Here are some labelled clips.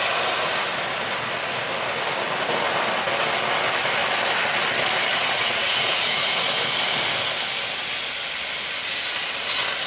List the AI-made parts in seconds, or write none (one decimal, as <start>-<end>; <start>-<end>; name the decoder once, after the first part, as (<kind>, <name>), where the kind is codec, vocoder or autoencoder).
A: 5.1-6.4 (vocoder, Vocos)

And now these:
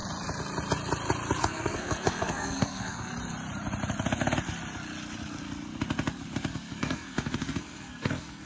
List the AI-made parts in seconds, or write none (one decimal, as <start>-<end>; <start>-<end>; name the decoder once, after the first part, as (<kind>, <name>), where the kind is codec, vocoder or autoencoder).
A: 1.4-3.1 (codec, SNAC); 6.5-8.5

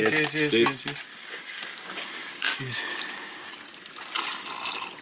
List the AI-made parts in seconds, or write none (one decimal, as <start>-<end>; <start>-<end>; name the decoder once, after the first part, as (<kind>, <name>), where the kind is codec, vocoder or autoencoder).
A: 1.1-3.5 (codec, DAC)

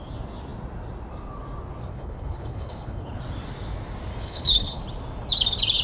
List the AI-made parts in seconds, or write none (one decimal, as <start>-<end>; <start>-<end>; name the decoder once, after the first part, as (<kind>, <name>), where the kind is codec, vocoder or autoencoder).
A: 1.9-3.2 (codec, HILCodec); 4.1-4.8